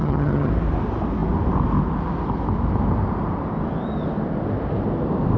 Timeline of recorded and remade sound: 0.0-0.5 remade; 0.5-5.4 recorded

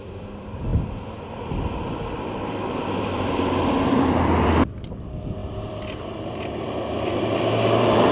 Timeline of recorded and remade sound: 0.0-8.1 remade

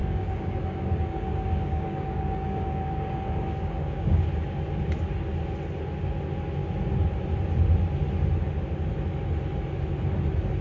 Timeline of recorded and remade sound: 0.0-4.2 remade; 4.2-10.6 recorded

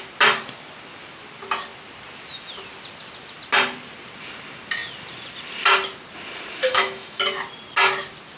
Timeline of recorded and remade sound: 0.0-6.6 recorded; 6.6-7.2 remade; 7.2-8.4 recorded

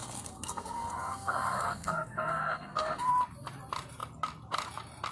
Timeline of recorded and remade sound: 0.0-3.1 remade; 3.1-5.1 recorded

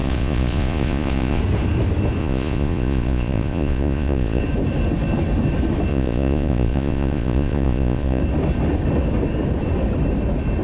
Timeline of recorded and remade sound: 0.0-1.4 remade; 1.4-2.2 recorded; 2.2-4.4 remade; 4.4-5.9 recorded; 5.9-8.2 remade; 8.2-10.6 recorded

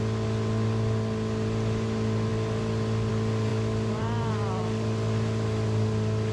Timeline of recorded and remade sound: 0.0-3.5 recorded; 3.5-4.3 remade; 4.3-6.3 recorded